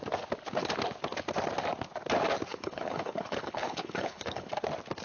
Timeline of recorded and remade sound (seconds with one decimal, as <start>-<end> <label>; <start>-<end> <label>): 0.0-2.5 recorded; 2.5-4.5 remade; 4.5-5.0 recorded